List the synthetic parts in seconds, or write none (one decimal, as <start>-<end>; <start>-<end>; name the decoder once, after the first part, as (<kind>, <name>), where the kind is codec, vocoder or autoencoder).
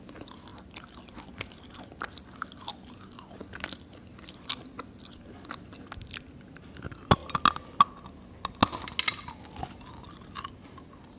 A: none